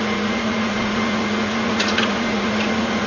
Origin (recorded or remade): remade